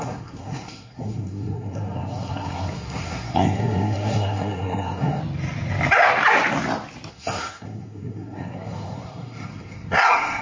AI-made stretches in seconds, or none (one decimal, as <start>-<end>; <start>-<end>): 0.0-5.2; 7.1-10.4